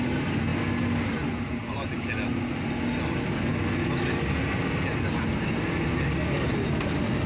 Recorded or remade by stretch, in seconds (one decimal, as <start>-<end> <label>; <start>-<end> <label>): 0.0-7.3 recorded